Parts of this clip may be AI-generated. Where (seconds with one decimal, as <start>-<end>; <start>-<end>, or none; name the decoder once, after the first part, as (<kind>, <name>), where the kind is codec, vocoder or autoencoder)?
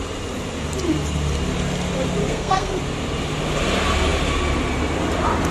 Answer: 2.2-2.8 (codec, SNAC)